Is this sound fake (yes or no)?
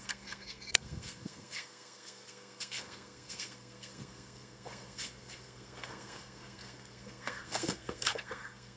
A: yes